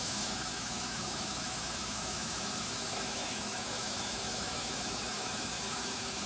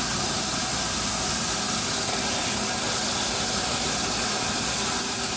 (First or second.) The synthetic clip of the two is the first